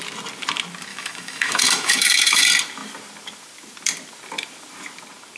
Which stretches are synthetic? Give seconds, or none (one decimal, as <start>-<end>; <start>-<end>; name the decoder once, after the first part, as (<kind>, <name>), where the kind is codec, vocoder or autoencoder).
0.9-2.4 (autoencoder, DAC-VAE)